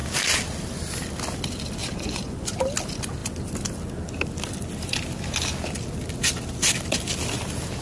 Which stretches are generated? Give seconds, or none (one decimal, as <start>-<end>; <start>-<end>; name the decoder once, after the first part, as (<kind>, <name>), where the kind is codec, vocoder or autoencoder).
1.8-2.5 (vocoder, Vocos)